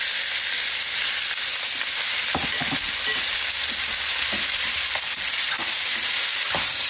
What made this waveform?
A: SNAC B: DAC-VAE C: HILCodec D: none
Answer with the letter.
D